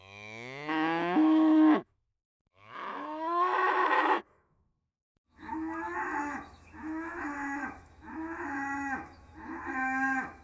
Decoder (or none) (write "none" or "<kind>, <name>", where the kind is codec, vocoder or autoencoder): autoencoder, DAC-VAE